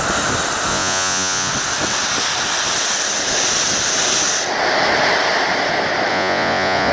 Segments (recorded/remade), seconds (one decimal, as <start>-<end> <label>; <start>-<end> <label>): 0.0-0.7 recorded; 0.7-1.5 remade; 1.5-6.1 recorded; 6.1-6.9 remade